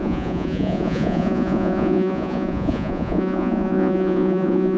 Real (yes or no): no